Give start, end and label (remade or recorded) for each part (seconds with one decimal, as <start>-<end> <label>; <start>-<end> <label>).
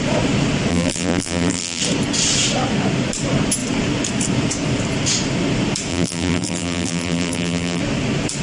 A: 0.0-0.7 recorded; 0.7-1.8 remade; 1.8-5.9 recorded; 5.9-7.8 remade; 7.8-8.4 recorded